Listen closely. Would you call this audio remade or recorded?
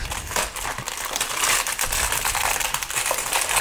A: remade